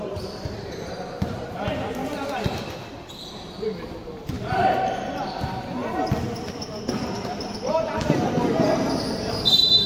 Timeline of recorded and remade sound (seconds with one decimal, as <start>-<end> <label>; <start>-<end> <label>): 0.0-2.0 remade; 2.0-3.3 recorded; 3.3-5.8 remade; 5.8-6.9 recorded; 6.9-9.9 remade